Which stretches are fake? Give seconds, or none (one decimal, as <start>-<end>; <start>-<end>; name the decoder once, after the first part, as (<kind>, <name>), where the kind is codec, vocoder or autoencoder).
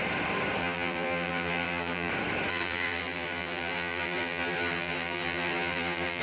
0.6-2.1 (vocoder, BigVGAN v2); 2.5-6.2